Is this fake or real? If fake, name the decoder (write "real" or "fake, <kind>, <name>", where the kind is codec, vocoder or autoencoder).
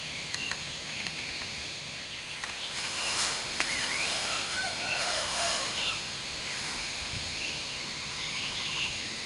fake, autoencoder, DAC-VAE